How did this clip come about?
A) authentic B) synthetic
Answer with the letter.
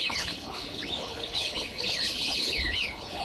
B